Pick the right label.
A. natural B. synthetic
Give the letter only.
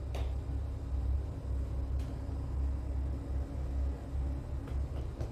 A